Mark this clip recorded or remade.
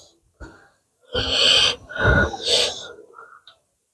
recorded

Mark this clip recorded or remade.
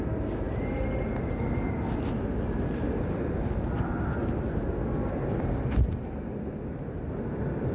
recorded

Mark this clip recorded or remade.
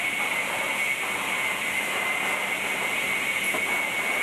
recorded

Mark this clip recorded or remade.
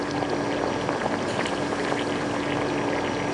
recorded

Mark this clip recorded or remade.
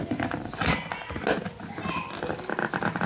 recorded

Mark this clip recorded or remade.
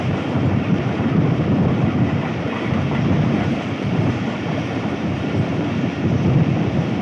remade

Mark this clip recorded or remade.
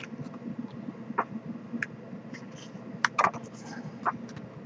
recorded